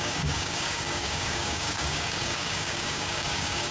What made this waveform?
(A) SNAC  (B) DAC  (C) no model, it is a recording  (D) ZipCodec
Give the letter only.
B